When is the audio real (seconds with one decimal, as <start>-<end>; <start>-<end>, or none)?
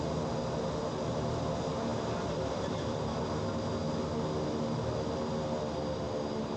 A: 0.0-1.9; 3.2-6.6